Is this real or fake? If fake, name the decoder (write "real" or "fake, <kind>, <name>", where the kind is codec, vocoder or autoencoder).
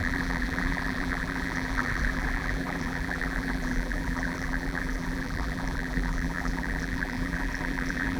fake, vocoder, BigVGAN v2